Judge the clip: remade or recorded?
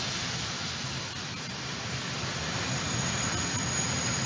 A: recorded